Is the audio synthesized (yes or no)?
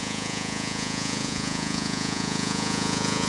yes